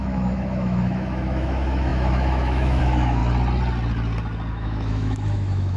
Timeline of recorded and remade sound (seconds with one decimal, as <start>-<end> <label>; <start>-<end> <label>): 0.0-3.2 remade; 3.2-4.5 recorded; 4.5-5.8 remade